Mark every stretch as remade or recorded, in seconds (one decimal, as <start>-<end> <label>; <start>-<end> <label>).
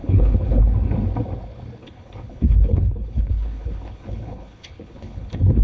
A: 0.0-0.6 remade; 0.6-1.8 recorded; 1.8-5.6 remade